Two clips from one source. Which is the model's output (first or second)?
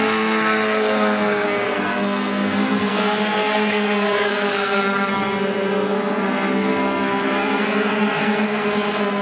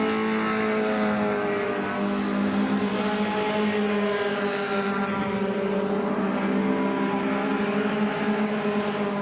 first